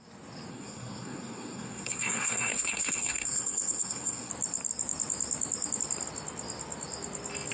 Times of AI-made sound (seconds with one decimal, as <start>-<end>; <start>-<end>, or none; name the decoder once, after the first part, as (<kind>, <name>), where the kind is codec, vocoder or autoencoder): 0.5-4.3 (codec, SNAC)